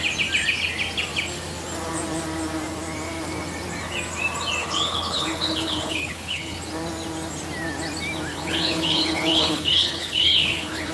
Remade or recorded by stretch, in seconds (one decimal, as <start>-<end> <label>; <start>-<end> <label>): 0.0-4.6 recorded; 4.6-6.6 remade; 6.6-8.3 recorded; 8.3-10.9 remade